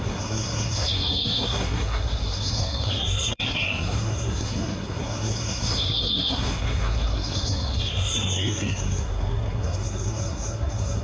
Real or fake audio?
fake